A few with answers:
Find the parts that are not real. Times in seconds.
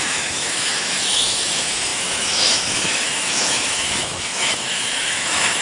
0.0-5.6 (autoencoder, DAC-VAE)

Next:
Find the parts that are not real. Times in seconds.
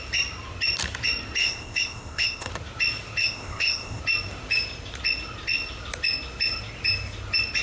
1.4-2.5 (codec, ZipCodec); 3.2-4.0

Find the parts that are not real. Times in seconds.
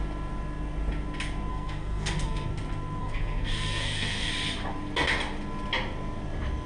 1.5-2.5 (codec, SNAC); 3.0-4.3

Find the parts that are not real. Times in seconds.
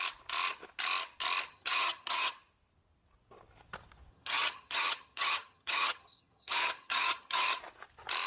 1.5-2.3 (vocoder, HiFi-GAN); 4.1-7.6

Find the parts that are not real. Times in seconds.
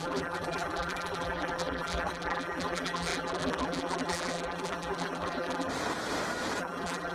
0.0-5.7 (vocoder, BigVGAN v2); 6.6-7.1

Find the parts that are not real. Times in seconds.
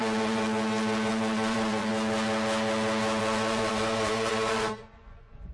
0.0-0.4 (vocoder, Vocos); 1.1-1.9; 3.2-5.5